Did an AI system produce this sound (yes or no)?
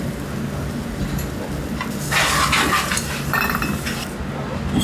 no